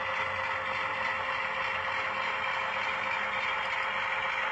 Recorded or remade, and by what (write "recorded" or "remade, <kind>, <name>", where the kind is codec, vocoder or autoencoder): recorded